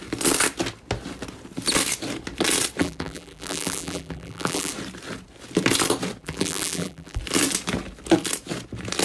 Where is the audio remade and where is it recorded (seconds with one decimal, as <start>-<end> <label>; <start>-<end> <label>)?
0.0-2.8 recorded; 2.8-4.7 remade; 4.7-6.2 recorded; 6.2-7.2 remade; 7.2-9.0 recorded